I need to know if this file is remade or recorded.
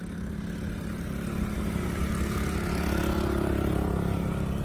recorded